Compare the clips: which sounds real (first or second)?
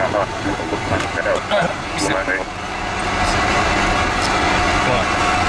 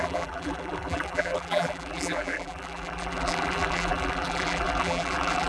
first